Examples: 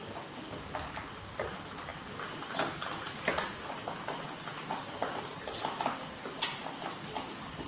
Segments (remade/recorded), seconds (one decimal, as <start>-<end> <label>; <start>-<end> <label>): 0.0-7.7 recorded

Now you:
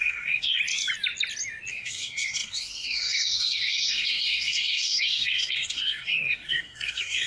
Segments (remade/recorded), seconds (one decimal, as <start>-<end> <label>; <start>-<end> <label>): 0.0-0.6 remade; 0.6-1.7 recorded; 1.7-7.3 remade

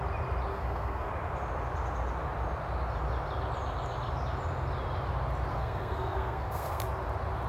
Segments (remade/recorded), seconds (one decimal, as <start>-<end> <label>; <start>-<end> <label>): 0.0-0.5 recorded; 0.5-1.1 remade; 1.1-5.5 recorded; 5.5-6.8 remade; 6.8-7.5 recorded

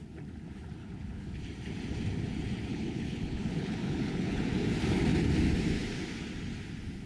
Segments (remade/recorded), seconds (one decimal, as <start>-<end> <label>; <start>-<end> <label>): 0.0-0.8 recorded; 0.8-1.4 remade; 1.4-2.7 recorded; 2.7-4.4 remade; 4.4-7.1 recorded

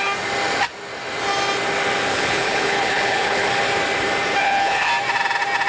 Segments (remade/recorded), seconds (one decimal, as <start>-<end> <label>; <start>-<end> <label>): 0.0-2.1 recorded; 2.1-3.5 remade; 3.5-4.4 recorded; 4.4-4.9 remade; 4.9-5.7 recorded

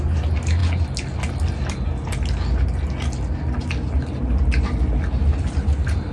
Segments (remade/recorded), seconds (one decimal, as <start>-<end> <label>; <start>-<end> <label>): 0.0-6.1 recorded